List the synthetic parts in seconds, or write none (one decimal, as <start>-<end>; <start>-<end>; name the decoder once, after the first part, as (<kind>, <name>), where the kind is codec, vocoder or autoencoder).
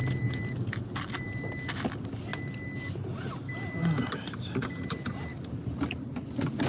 none